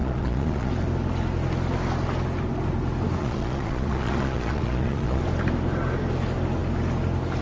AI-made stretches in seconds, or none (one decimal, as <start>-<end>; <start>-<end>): 0.0-0.7; 3.2-5.2